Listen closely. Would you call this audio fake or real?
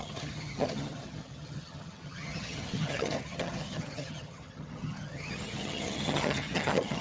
fake